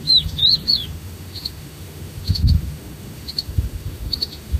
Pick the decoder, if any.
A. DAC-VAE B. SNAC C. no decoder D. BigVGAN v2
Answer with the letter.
A